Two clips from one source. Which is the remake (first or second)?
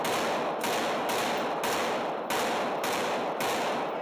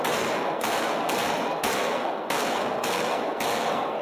second